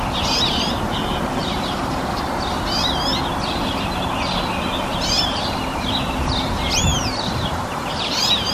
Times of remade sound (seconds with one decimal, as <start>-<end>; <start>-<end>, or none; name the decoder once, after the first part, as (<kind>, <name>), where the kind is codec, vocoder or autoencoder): 1.4-2.0 (vocoder, BigVGAN v2); 6.9-8.5